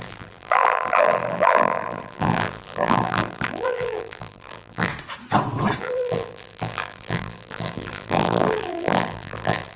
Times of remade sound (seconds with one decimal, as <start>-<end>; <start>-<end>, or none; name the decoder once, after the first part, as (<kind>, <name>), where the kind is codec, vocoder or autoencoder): 0.0-4.9 (vocoder, BigVGAN v2); 5.8-9.8

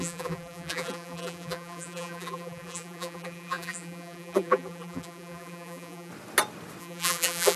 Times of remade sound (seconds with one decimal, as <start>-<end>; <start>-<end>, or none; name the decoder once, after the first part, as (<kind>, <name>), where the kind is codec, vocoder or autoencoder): 0.0-6.1 (vocoder, BigVGAN v2); 6.8-7.6